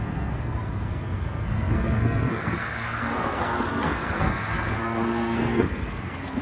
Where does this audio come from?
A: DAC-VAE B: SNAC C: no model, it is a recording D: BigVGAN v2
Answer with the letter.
B